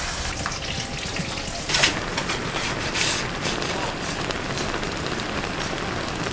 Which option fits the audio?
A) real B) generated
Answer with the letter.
A